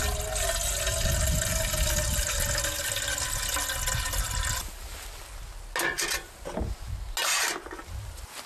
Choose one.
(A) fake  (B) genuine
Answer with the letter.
B